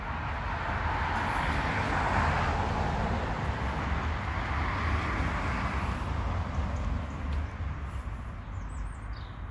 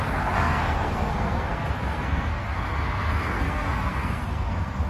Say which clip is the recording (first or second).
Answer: first